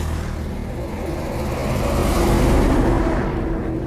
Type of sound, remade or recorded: recorded